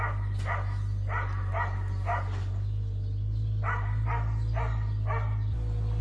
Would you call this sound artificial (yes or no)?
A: no